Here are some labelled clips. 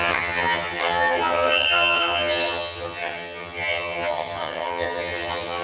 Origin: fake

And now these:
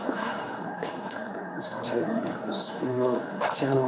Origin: fake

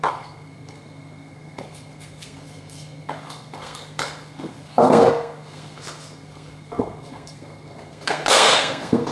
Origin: fake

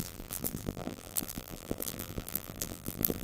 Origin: fake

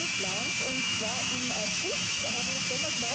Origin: fake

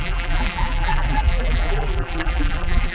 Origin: fake